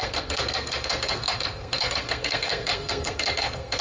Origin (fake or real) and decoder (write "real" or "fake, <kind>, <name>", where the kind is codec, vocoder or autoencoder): fake, codec, SNAC